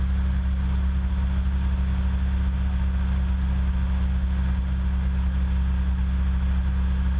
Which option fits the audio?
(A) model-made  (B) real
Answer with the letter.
B